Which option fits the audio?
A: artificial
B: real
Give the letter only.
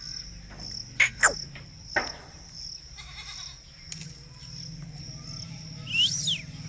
B